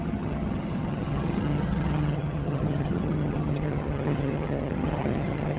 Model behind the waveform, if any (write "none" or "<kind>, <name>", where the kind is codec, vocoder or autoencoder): vocoder, HiFi-GAN